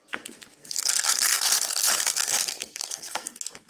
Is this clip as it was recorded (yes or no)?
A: no